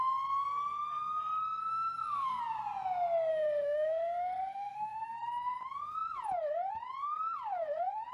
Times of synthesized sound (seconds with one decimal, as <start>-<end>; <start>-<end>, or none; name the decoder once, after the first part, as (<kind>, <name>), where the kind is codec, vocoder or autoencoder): 1.6-2.4 (codec, SNAC); 3.3-5.6